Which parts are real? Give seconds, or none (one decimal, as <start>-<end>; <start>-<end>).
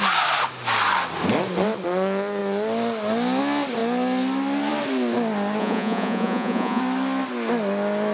0.0-5.6; 6.8-8.1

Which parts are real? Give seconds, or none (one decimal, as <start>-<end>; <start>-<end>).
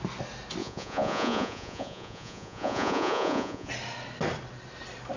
0.0-0.6; 3.7-5.2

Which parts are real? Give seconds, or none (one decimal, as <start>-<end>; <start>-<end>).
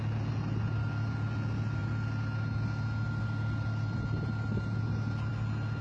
0.0-5.8